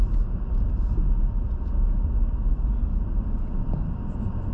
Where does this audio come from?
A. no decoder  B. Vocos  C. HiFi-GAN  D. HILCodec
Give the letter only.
A